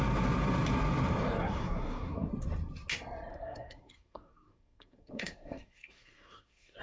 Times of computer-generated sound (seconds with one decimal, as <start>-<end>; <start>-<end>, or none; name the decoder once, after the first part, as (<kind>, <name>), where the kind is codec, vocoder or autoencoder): 1.4-2.3 (codec, SNAC); 3.3-6.8